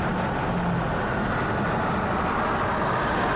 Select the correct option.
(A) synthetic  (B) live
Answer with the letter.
B